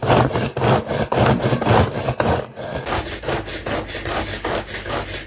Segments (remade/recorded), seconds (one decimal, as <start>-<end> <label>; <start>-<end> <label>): 0.0-5.3 recorded

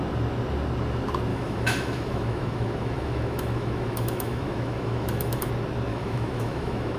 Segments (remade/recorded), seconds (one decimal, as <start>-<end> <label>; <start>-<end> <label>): 0.0-1.3 recorded; 1.3-5.5 remade; 5.5-5.9 recorded; 5.9-7.0 remade